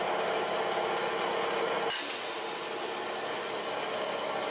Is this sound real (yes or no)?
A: yes